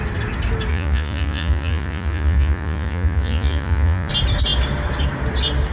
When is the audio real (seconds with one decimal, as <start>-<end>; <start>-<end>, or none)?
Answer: 0.0-0.7; 4.1-5.7